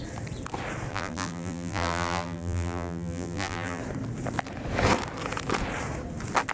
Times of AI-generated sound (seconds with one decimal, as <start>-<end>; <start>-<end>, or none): 0.9-3.8